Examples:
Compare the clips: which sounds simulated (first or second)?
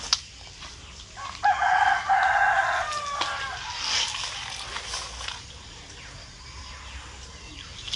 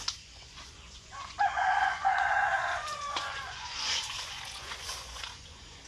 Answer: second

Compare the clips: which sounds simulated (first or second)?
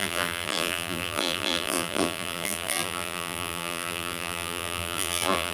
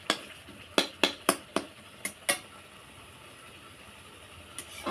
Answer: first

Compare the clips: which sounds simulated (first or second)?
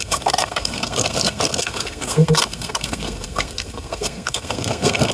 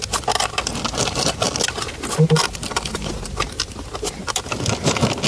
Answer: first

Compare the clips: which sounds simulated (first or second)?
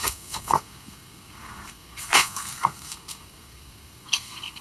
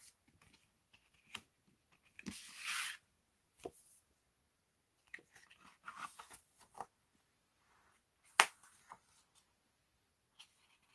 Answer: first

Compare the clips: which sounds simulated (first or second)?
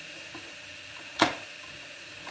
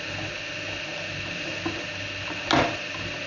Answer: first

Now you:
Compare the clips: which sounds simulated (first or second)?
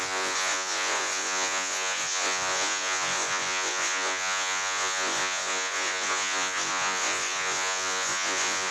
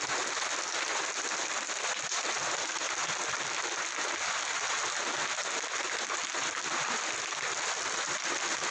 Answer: first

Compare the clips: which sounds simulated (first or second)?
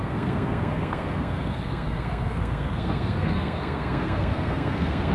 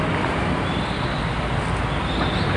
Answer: first